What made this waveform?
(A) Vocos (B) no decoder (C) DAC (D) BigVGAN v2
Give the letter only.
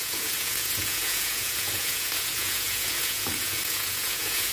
A